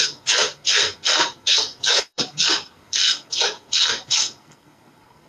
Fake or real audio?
fake